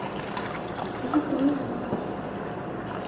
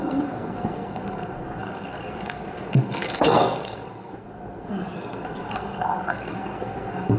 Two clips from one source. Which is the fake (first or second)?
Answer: second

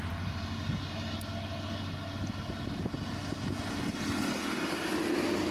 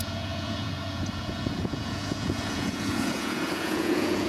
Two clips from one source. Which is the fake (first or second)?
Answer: second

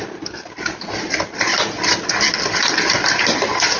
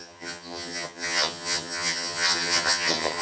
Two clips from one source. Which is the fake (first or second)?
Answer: second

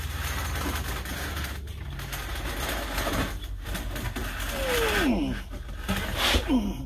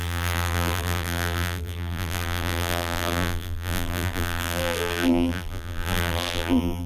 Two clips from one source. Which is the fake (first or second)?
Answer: second